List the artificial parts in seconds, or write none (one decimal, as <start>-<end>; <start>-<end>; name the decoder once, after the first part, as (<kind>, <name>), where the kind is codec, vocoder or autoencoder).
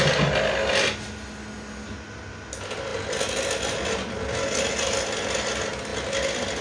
none